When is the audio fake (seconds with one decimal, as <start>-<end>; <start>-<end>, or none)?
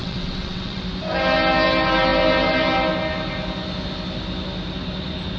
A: 0.0-0.8